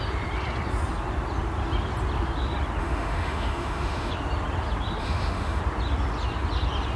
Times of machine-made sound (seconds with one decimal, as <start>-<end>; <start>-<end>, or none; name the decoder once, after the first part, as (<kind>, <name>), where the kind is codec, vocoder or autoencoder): 2.8-4.1 (autoencoder, DAC-VAE); 5.0-5.6